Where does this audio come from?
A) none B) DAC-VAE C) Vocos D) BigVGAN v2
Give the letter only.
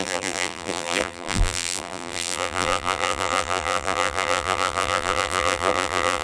D